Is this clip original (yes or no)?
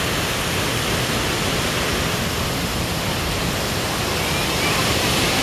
yes